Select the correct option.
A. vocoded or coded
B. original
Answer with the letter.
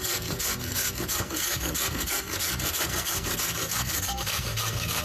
A